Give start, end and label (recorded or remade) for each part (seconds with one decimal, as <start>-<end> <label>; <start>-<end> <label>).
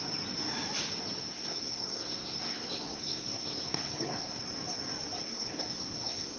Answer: 0.0-1.3 recorded; 1.3-4.4 remade; 4.4-5.2 recorded; 5.2-6.4 remade